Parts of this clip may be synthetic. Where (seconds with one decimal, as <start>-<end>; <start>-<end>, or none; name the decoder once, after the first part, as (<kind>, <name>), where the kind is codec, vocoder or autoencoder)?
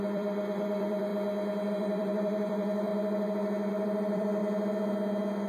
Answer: 0.0-1.1 (vocoder, BigVGAN v2); 1.7-2.9; 3.7-4.4